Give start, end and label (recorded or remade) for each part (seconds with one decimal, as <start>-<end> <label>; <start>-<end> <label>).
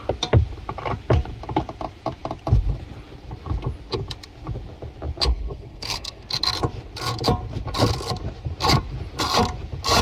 0.0-5.3 recorded; 5.3-6.2 remade; 6.2-10.0 recorded